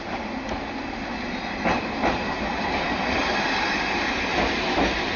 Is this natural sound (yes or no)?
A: yes